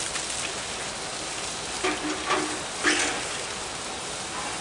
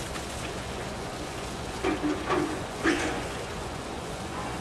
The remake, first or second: second